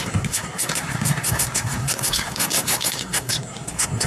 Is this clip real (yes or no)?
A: no